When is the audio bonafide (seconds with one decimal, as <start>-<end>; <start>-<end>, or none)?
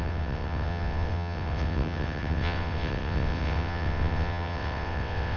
none